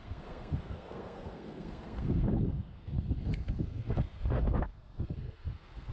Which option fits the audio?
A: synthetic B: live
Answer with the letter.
A